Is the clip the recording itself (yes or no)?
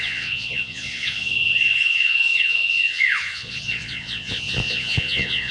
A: no